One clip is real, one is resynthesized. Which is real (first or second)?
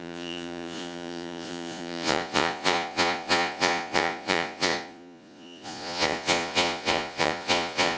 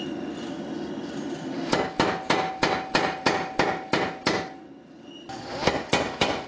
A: second